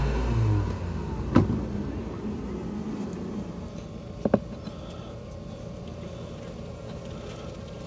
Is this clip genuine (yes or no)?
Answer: yes